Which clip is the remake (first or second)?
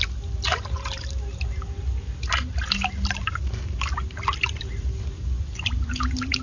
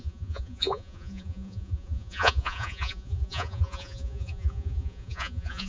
second